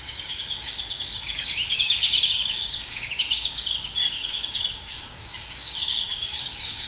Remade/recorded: remade